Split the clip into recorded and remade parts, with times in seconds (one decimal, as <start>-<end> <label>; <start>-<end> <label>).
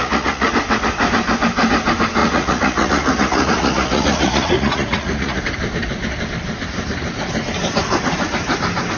0.0-0.5 remade; 0.5-2.2 recorded; 2.2-5.4 remade; 5.4-9.0 recorded